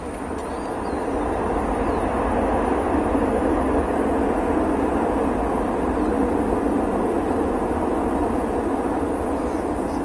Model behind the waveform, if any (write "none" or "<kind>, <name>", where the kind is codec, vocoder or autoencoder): none